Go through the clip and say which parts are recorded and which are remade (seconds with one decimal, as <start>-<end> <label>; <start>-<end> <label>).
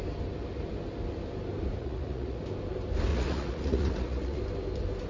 0.0-1.8 recorded; 1.8-2.4 remade; 2.4-3.1 recorded; 3.1-4.4 remade; 4.4-5.1 recorded